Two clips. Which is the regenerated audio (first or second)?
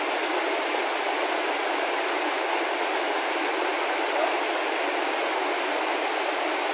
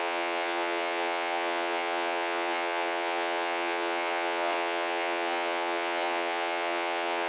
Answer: second